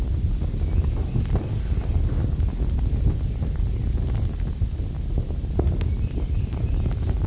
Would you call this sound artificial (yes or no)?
no